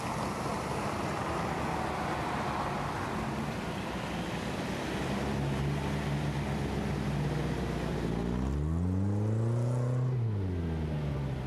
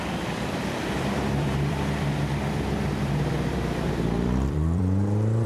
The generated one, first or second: second